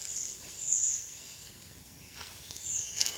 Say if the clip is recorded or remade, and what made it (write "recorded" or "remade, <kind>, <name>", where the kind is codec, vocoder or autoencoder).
remade, codec, SNAC